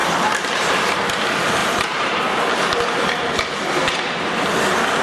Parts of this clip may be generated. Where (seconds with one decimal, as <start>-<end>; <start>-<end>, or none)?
0.0-1.2; 1.6-2.2